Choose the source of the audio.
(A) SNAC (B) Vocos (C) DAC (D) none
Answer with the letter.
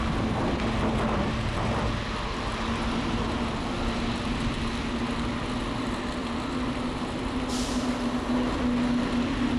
D